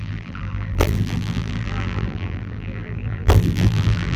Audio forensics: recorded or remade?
remade